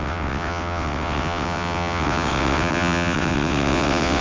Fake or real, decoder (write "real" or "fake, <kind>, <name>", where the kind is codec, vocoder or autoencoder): fake, vocoder, WaveNeXt